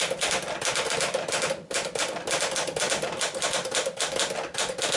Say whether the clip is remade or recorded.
recorded